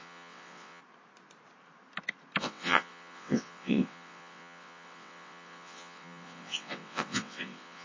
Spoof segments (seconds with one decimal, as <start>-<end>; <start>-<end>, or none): 0.0-0.8; 2.4-7.8